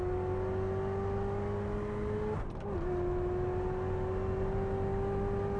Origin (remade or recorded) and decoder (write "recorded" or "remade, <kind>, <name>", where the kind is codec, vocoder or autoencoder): recorded